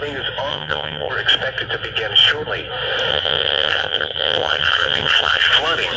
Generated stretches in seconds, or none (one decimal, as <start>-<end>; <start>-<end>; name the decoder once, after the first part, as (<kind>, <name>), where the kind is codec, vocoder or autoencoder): 0.5-1.1 (vocoder, HiFi-GAN); 3.1-5.5